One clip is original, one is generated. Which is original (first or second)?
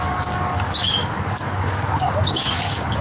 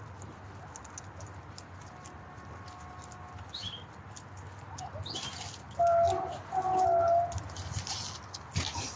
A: second